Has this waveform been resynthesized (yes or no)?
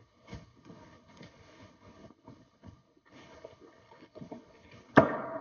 yes